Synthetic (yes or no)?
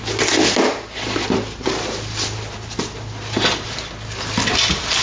no